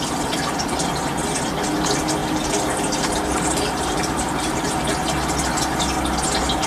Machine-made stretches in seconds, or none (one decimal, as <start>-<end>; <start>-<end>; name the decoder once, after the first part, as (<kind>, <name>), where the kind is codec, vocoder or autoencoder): 2.2-4.7 (vocoder, BigVGAN v2)